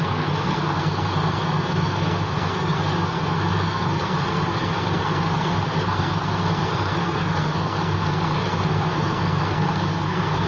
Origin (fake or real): fake